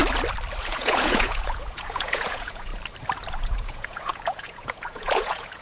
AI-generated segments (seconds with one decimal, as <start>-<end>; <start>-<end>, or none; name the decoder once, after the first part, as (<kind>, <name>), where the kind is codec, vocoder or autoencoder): 0.6-2.7 (vocoder, Vocos); 3.3-5.6